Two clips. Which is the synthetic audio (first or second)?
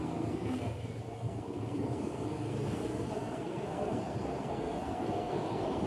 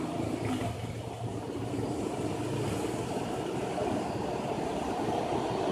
first